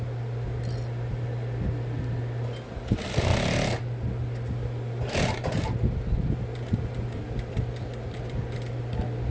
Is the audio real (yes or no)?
yes